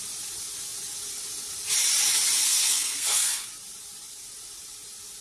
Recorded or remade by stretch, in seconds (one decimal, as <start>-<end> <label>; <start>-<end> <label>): 0.0-2.4 recorded; 2.4-3.5 remade; 3.5-5.2 recorded